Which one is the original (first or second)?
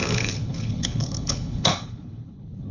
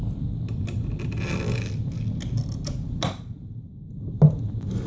second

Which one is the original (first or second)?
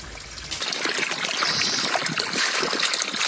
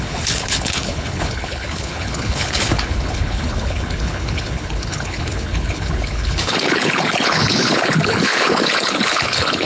first